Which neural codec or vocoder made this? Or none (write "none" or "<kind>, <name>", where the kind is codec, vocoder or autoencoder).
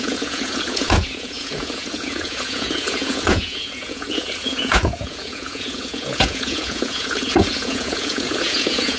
vocoder, Vocos